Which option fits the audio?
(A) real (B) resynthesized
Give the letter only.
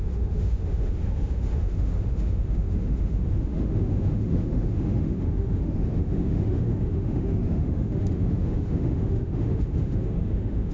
B